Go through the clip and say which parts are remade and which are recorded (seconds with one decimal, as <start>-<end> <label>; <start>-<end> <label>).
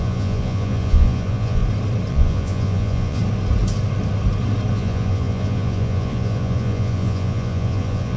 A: 0.0-1.6 remade; 1.6-2.1 recorded; 2.1-3.2 remade; 3.2-4.7 recorded; 4.7-8.2 remade